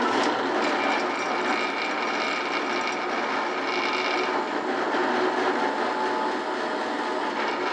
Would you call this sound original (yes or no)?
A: yes